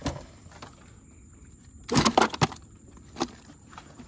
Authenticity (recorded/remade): recorded